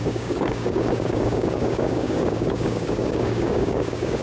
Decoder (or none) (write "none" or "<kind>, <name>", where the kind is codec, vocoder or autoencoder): codec, DAC